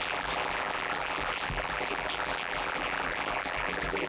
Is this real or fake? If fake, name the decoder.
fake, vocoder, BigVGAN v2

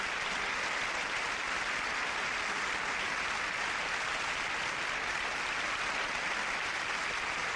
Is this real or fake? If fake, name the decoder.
real